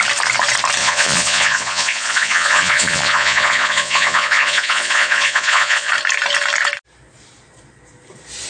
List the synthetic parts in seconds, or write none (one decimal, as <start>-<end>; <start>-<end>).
0.8-5.9